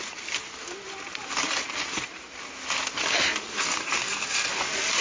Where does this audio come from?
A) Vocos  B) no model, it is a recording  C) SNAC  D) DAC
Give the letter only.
B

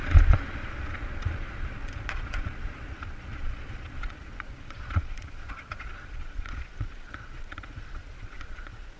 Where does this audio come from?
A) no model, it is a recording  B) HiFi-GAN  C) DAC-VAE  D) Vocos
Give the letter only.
D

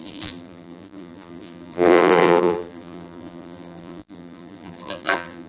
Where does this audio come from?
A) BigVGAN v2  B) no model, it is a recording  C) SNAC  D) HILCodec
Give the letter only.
A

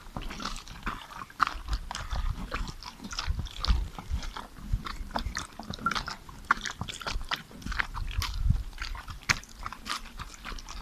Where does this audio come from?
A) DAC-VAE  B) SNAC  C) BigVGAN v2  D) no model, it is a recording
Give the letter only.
D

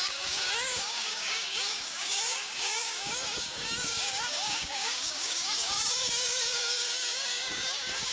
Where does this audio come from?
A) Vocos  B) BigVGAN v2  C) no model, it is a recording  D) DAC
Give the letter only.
D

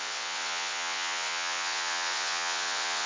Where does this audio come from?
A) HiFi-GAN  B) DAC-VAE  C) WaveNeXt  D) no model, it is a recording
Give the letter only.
C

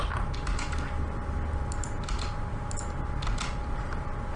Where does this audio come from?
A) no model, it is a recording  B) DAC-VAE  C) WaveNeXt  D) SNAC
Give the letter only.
A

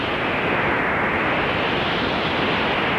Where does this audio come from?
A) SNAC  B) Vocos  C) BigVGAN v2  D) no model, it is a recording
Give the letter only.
D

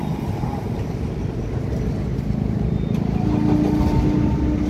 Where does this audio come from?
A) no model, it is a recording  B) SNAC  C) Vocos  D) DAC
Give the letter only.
A